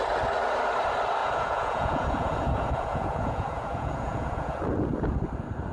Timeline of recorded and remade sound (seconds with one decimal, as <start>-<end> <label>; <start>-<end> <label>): 0.0-1.2 recorded; 1.2-4.6 remade; 4.6-5.7 recorded